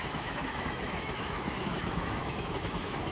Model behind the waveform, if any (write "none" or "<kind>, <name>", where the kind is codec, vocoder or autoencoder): autoencoder, DAC-VAE